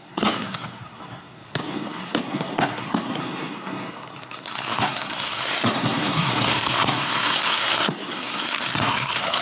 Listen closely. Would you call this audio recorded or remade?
remade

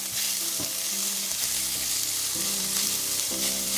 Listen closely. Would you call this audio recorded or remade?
remade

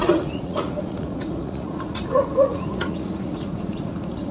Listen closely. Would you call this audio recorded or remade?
remade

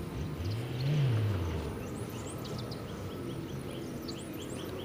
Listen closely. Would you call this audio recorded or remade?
recorded